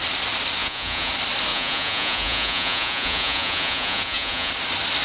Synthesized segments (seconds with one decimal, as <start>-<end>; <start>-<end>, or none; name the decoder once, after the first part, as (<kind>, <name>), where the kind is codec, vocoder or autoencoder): 0.6-1.1 (vocoder, Vocos); 1.5-4.5